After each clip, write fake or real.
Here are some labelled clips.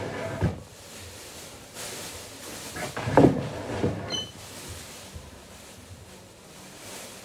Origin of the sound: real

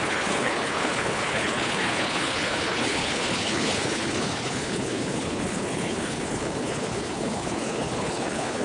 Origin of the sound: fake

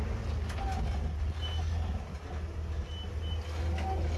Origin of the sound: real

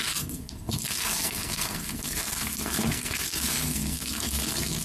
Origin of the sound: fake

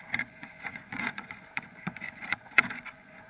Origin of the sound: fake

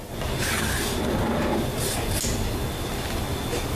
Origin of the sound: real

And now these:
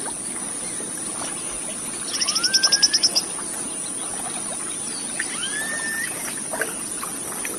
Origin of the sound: real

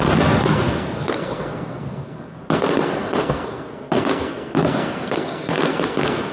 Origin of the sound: fake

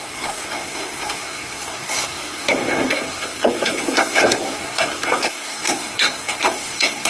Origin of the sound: fake